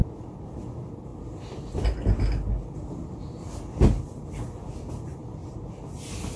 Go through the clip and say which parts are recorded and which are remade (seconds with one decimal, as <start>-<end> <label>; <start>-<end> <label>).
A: 0.0-6.4 recorded